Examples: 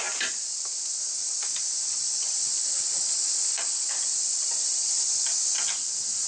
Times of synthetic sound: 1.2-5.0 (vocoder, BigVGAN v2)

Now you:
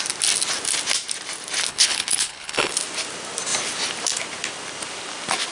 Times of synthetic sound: 1.7-2.7 (codec, HILCodec)

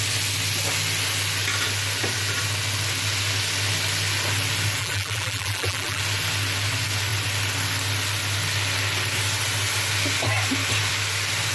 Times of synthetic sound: 4.8-6.0 (vocoder, BigVGAN v2)

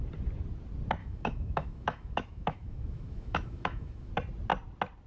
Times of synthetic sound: 1.0-4.1 (autoencoder, DAC-VAE)

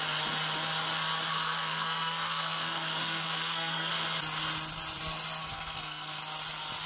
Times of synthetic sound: 1.3-3.9 (codec, SNAC); 5.4-6.2

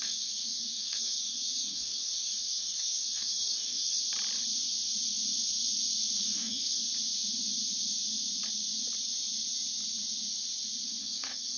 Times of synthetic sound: 0.0-4.0 (codec, DAC); 6.2-6.8; 11.0-11.6